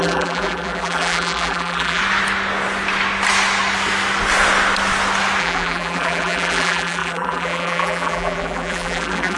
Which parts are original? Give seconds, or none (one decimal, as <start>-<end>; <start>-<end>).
2.0-5.4